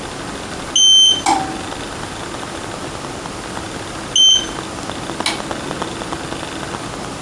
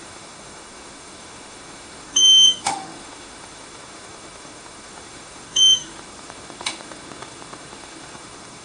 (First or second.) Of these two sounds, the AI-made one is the second